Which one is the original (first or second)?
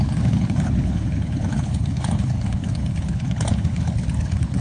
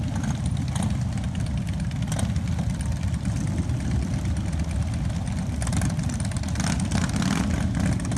second